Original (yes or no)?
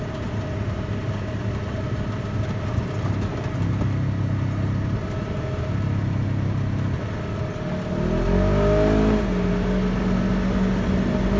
yes